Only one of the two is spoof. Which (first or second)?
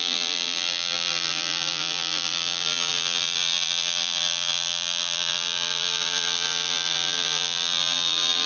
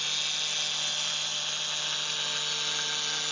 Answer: first